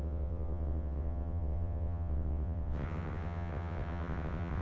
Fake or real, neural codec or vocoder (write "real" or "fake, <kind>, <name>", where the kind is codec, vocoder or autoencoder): fake, vocoder, WaveNeXt